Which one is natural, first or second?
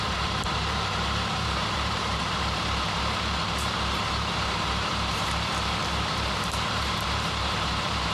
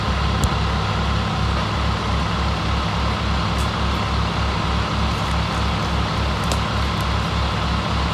second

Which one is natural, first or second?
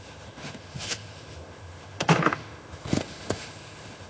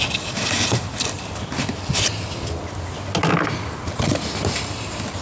second